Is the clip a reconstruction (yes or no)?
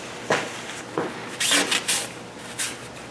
no